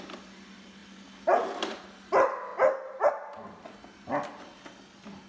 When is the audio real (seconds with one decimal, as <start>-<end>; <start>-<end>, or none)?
0.0-5.3